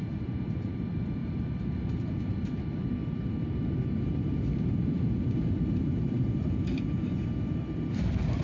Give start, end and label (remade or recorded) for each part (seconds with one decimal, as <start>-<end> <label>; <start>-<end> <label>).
0.0-8.4 remade